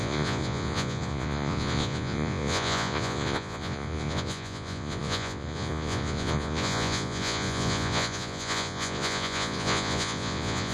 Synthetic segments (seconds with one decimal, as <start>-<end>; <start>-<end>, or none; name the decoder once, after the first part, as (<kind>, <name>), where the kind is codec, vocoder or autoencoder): 0.0-10.7 (vocoder, Vocos)

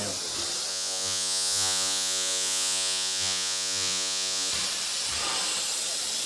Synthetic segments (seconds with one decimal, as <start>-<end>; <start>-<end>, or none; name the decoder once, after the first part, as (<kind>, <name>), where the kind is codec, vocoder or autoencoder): 0.7-4.5 (vocoder, Vocos)

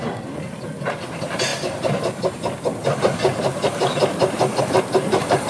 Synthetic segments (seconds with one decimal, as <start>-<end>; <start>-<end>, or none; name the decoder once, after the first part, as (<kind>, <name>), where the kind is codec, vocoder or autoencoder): none

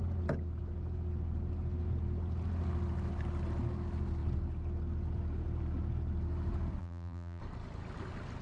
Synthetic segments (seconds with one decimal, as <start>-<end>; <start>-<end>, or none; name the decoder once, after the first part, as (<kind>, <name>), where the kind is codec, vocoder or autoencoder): 6.8-7.4 (vocoder, BigVGAN v2)